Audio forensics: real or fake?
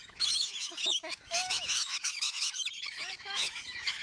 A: fake